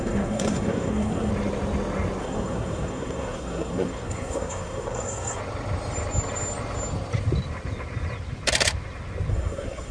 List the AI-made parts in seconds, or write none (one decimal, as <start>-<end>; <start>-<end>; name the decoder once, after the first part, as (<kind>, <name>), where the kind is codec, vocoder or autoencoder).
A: 0.0-1.3 (codec, SNAC); 2.2-5.4; 9.3-9.9